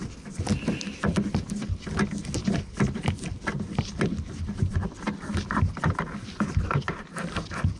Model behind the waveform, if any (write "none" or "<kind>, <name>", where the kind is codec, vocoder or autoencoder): none